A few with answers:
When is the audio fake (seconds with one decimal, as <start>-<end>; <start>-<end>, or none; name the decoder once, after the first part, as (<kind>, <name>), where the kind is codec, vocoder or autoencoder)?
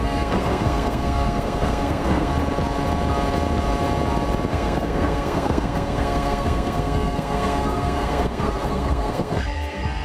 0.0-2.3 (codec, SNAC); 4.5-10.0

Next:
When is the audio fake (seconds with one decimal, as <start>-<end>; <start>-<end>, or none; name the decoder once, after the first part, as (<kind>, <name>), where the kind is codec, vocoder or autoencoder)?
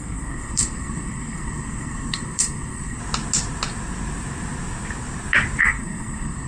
0.0-3.0 (codec, SNAC); 5.6-6.5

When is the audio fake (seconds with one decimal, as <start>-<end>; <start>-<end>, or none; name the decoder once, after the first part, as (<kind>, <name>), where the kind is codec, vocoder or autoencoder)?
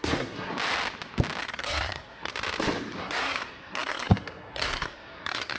0.0-0.5 (codec, SNAC); 1.4-2.3; 3.0-5.6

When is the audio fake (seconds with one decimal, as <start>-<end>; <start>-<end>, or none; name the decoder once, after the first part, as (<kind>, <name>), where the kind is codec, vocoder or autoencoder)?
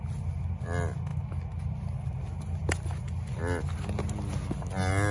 none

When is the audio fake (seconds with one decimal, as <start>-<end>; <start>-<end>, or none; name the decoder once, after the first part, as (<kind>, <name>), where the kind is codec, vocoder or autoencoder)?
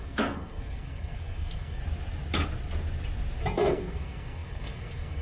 0.0-1.8 (codec, SNAC); 3.4-5.2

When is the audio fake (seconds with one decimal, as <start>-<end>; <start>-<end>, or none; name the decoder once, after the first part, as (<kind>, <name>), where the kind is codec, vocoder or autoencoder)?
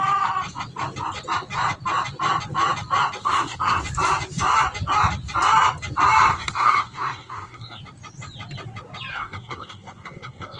3.2-3.8 (codec, SNAC); 6.3-7.8; 9.1-10.6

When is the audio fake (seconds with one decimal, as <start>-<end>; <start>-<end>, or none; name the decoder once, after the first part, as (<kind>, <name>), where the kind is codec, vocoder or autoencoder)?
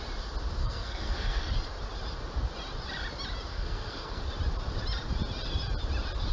0.6-1.5 (codec, SNAC); 3.5-4.2